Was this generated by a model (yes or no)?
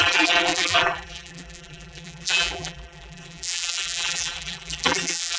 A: yes